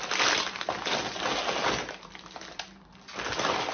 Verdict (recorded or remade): recorded